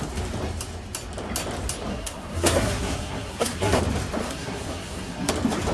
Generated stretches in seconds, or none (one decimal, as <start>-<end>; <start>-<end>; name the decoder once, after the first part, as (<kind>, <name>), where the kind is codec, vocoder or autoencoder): 1.9-3.8 (codec, SNAC); 4.2-5.3